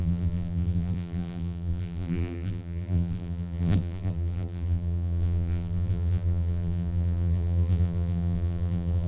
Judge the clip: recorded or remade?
remade